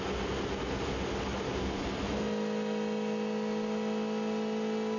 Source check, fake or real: real